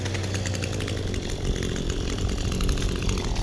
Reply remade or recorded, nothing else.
recorded